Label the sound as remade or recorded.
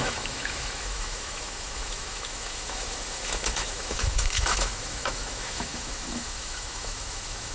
remade